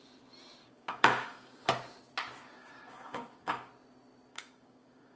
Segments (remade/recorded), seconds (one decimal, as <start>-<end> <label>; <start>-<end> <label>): 0.0-0.6 recorded; 0.6-1.7 remade; 1.7-2.6 recorded; 2.6-3.7 remade; 3.7-4.3 recorded; 4.3-5.2 remade